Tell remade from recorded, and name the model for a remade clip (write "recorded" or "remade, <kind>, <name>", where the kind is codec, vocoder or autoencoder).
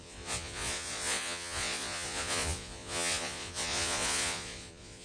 remade, vocoder, Vocos